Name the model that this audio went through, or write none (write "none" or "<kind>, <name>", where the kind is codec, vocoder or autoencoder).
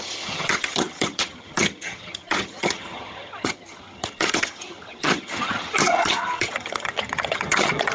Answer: vocoder, HiFi-GAN